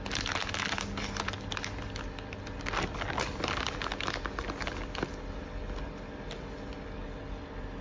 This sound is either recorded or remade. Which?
recorded